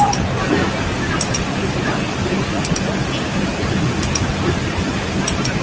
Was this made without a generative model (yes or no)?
yes